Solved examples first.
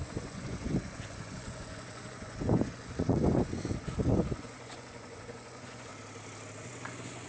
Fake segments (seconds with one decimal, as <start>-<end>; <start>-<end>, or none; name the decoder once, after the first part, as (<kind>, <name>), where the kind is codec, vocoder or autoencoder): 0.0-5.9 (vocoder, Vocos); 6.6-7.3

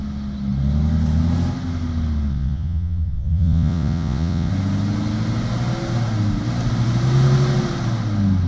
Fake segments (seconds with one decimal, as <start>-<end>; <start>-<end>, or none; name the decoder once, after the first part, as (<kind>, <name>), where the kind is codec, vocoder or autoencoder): 2.3-4.5 (vocoder, Vocos)

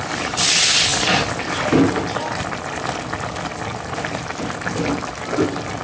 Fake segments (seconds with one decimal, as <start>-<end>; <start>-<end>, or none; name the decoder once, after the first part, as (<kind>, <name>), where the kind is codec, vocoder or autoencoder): none